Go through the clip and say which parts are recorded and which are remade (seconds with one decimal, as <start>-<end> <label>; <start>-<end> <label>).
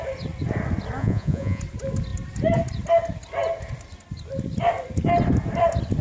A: 0.0-1.0 recorded; 1.0-1.6 remade; 1.6-6.0 recorded